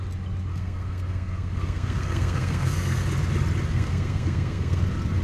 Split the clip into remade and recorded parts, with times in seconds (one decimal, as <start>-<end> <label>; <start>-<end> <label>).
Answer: 0.0-0.5 recorded; 0.5-3.0 remade; 3.0-3.7 recorded; 3.7-4.8 remade; 4.8-5.2 recorded